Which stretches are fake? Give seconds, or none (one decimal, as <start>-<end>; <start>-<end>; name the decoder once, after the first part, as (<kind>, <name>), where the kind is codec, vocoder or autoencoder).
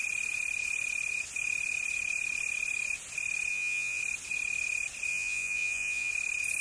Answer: 3.5-4.0 (vocoder, Vocos); 5.1-6.1